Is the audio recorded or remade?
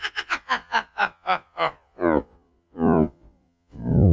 remade